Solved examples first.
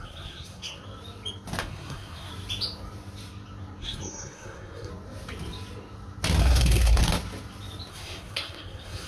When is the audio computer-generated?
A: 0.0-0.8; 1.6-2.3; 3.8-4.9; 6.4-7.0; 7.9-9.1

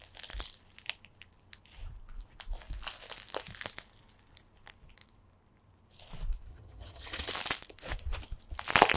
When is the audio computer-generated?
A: 6.5-7.3

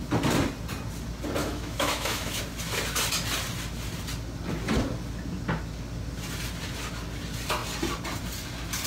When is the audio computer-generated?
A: 1.4-2.4

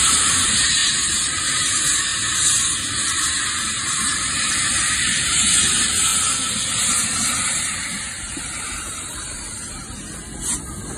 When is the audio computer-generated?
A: 0.0-6.1; 6.9-9.6

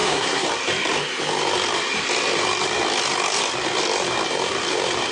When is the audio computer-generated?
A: 0.0-0.5

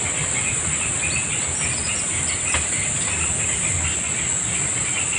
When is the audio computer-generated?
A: none

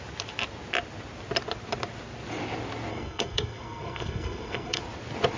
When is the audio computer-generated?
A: 2.9-4.8

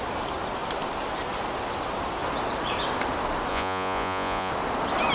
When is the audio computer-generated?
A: 3.5-4.5